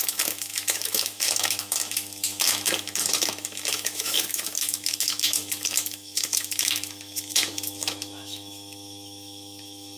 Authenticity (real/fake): fake